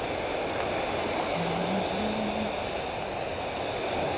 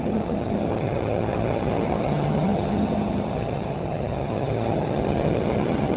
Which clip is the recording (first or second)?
first